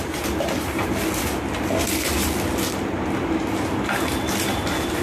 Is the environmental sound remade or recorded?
recorded